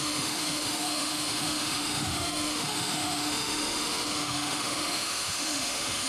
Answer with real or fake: fake